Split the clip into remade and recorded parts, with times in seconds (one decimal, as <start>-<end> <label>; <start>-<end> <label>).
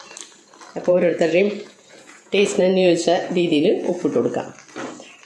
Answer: 0.0-0.9 recorded; 0.9-3.9 remade; 3.9-5.3 recorded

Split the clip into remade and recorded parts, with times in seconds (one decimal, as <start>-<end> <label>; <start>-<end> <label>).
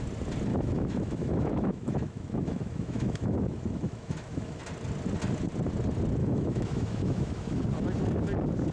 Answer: 0.0-0.5 recorded; 0.5-4.6 remade; 4.6-6.2 recorded; 6.2-7.6 remade; 7.6-8.7 recorded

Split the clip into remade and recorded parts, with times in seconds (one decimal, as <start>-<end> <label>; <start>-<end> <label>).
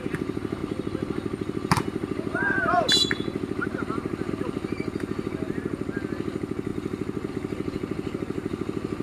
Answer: 0.0-9.0 recorded